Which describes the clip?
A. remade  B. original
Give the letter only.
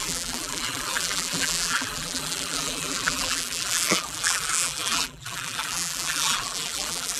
A